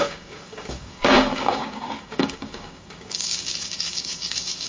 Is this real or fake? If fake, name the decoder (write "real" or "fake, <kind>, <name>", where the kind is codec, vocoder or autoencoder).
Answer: fake, codec, DAC